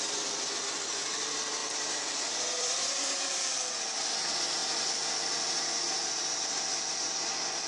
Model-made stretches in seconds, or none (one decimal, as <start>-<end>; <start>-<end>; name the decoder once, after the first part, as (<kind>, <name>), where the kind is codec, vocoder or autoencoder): 1.6-3.3 (vocoder, BigVGAN v2)